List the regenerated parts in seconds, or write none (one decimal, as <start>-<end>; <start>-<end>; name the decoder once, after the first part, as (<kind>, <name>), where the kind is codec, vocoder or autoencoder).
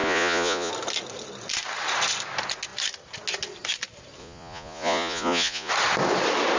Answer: 0.0-0.7 (vocoder, Vocos); 4.2-5.7